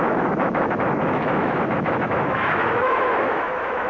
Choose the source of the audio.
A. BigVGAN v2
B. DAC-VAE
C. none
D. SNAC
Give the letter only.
B